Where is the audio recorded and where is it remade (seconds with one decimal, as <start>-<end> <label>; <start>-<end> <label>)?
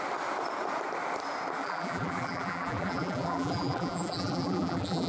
0.0-1.6 recorded; 1.6-5.1 remade